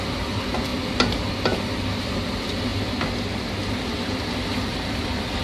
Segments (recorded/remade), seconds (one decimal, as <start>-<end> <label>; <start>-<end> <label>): 0.0-5.4 recorded